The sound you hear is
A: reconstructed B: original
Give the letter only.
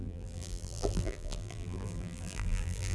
A